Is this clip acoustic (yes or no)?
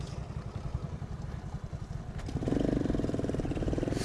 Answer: no